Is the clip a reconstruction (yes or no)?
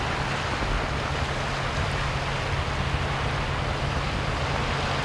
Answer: no